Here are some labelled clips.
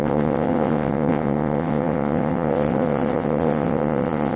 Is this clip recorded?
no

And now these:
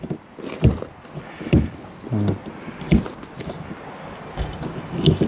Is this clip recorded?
yes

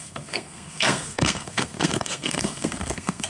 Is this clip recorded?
no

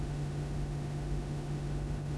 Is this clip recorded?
no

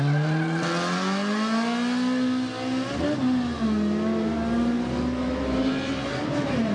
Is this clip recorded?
yes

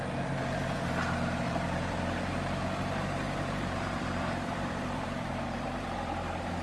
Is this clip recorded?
no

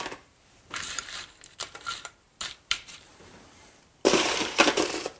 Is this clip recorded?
no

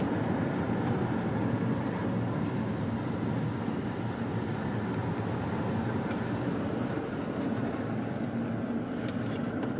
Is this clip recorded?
yes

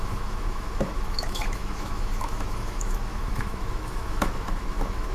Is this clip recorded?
no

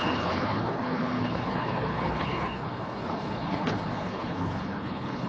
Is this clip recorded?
no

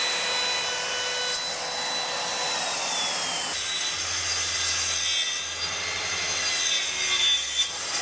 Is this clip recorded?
yes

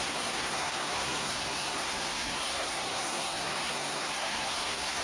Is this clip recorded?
no